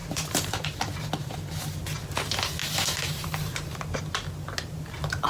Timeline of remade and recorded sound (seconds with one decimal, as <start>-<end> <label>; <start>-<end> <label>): 0.0-1.1 remade; 1.1-2.6 recorded; 2.6-4.0 remade; 4.0-5.3 recorded